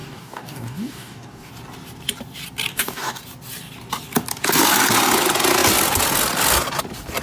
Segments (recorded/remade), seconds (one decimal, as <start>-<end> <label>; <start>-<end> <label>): 0.0-1.5 remade; 1.5-2.7 recorded; 2.7-3.2 remade; 3.2-7.2 recorded